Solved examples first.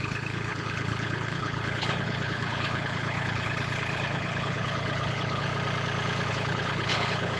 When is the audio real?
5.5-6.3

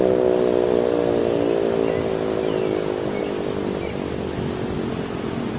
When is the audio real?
0.0-5.6

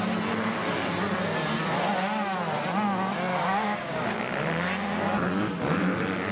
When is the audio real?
0.0-3.3; 4.2-6.3